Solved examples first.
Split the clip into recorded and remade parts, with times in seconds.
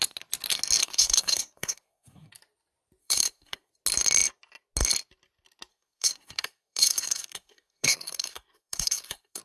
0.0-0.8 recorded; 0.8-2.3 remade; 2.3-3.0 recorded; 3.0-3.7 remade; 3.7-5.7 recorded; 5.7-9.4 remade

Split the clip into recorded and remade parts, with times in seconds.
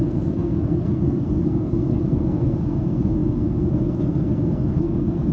0.0-5.3 remade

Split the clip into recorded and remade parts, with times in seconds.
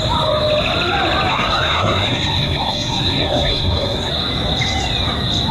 0.0-1.3 recorded; 1.3-4.1 remade; 4.1-5.5 recorded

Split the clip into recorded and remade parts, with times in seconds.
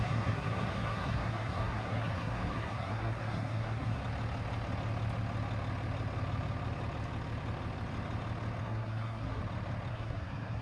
0.0-4.0 remade; 4.0-8.6 recorded; 8.6-9.4 remade; 9.4-9.9 recorded; 9.9-10.6 remade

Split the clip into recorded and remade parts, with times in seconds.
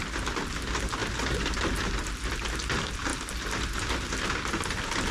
0.0-5.1 recorded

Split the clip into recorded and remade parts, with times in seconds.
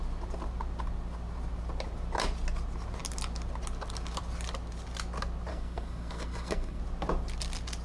0.0-5.5 recorded; 5.5-6.8 remade; 6.8-7.8 recorded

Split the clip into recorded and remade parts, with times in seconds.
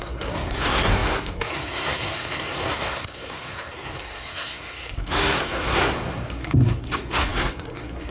0.0-8.1 remade